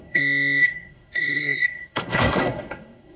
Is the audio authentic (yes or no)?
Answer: no